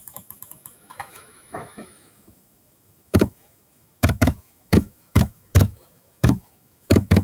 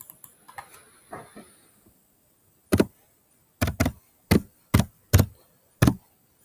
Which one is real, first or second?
second